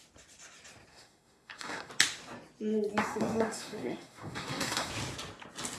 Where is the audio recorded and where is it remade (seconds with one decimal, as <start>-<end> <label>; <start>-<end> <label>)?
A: 0.0-0.9 recorded; 0.9-1.9 remade; 1.9-3.0 recorded; 3.0-4.9 remade; 4.9-5.8 recorded